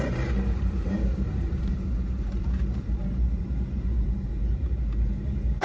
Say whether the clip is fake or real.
fake